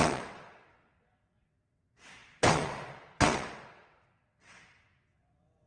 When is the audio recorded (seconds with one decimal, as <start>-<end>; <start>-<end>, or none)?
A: none